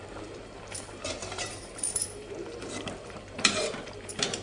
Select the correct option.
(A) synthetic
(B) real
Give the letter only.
A